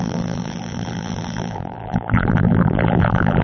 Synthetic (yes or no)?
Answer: yes